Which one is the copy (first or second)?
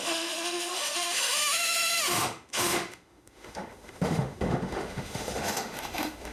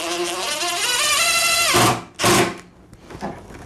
first